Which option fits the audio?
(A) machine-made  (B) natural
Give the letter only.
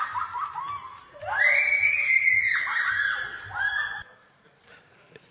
B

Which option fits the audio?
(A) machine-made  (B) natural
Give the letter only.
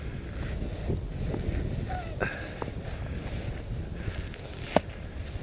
B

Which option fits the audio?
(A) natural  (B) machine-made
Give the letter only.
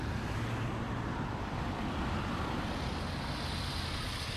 A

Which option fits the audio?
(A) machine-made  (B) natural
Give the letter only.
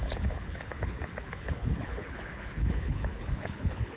A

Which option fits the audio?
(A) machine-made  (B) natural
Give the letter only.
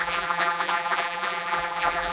A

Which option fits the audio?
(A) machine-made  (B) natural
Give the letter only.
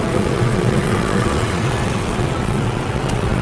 A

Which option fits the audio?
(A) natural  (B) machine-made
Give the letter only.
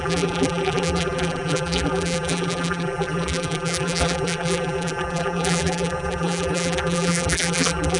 B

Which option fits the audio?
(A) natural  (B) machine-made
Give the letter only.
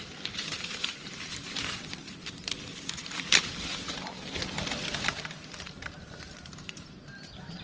B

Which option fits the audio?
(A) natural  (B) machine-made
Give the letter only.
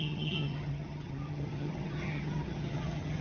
B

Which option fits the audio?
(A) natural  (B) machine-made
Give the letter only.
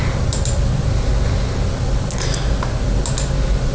A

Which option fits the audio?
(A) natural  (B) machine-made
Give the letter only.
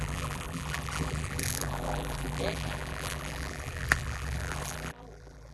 B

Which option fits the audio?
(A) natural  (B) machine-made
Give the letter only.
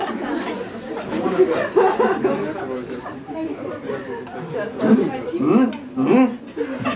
A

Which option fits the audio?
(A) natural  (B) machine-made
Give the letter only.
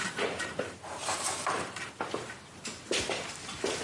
B